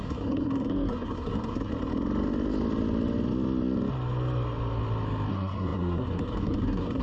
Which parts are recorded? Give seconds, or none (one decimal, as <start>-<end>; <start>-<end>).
1.7-5.3